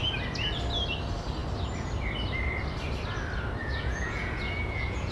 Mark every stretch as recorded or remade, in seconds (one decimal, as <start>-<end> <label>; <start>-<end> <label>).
0.0-3.6 recorded; 3.6-5.1 remade